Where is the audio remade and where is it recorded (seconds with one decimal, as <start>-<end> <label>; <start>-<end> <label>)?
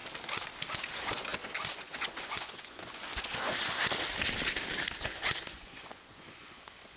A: 0.0-0.7 recorded; 0.7-3.8 remade; 3.8-5.0 recorded; 5.0-7.0 remade